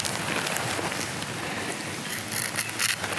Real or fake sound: real